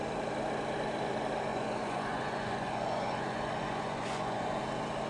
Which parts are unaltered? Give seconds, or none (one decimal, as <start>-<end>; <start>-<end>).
0.0-1.5; 4.6-5.1